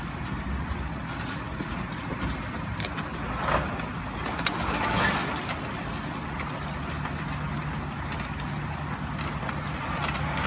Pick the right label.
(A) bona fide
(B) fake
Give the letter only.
A